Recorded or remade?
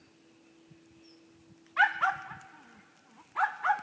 recorded